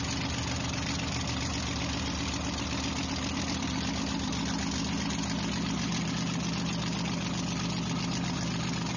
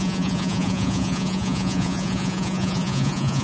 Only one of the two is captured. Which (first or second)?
first